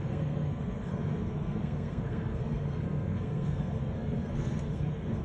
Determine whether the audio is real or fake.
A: fake